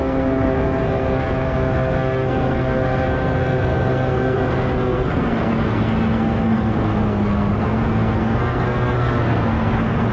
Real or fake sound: fake